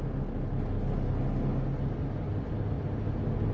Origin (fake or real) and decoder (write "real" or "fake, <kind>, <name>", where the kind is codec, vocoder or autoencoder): real